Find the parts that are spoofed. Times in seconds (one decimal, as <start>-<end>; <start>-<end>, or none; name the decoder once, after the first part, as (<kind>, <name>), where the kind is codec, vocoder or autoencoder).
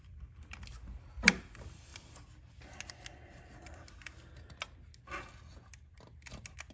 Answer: none